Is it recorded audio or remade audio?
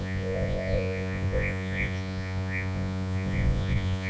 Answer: remade